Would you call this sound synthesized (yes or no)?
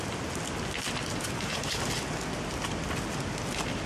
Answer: no